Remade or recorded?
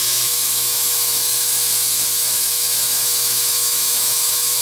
remade